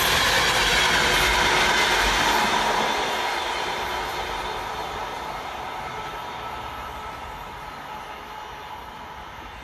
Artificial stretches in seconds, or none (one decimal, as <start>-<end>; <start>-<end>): none